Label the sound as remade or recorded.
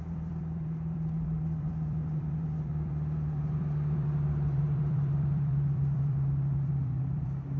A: remade